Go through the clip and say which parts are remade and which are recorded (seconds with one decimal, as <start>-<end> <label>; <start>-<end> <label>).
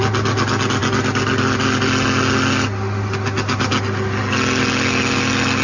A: 0.0-5.6 recorded